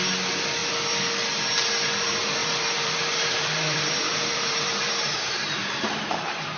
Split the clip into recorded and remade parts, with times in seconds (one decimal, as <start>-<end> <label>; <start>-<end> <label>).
0.0-2.4 recorded; 2.4-6.6 remade